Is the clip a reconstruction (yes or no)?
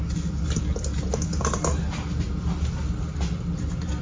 no